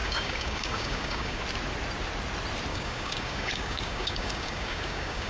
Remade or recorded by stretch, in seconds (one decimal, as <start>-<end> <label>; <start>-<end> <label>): 0.0-1.4 remade; 1.4-2.7 recorded; 2.7-5.3 remade